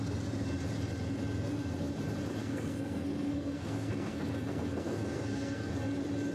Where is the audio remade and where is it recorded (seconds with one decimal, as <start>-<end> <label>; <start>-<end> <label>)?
0.0-2.4 recorded; 2.4-5.7 remade; 5.7-6.3 recorded